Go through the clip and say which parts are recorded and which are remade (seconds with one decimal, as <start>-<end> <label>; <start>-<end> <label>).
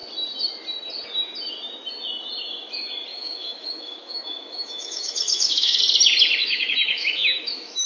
0.0-3.1 recorded; 3.1-5.8 remade; 5.8-6.4 recorded; 6.4-7.9 remade